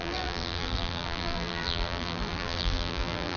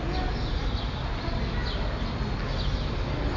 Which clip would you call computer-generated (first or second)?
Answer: first